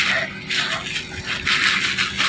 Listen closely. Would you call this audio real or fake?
real